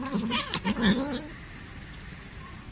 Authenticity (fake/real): fake